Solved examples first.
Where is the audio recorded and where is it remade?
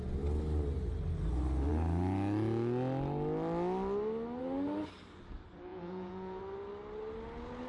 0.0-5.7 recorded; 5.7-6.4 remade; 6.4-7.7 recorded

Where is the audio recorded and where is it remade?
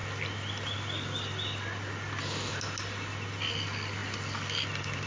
0.0-5.1 recorded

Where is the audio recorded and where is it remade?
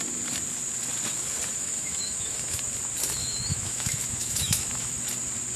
0.0-1.6 recorded; 1.6-2.6 remade; 2.6-3.2 recorded; 3.2-5.0 remade; 5.0-5.6 recorded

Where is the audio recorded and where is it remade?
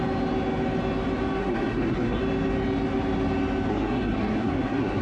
0.0-1.4 recorded; 1.4-2.2 remade; 2.2-3.7 recorded; 3.7-5.0 remade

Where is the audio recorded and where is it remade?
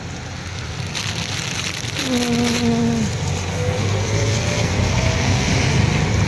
0.0-3.5 recorded; 3.5-5.5 remade; 5.5-6.3 recorded